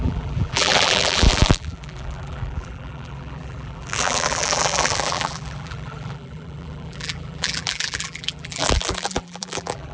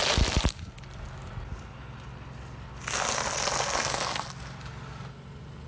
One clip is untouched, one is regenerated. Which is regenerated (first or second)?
first